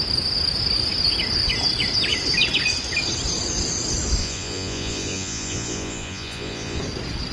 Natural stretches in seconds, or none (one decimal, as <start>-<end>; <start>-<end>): 0.0-4.2; 6.8-7.3